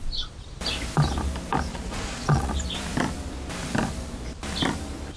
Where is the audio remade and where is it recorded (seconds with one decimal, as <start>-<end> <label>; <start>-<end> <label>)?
0.0-1.7 recorded; 1.7-2.5 remade; 2.5-5.2 recorded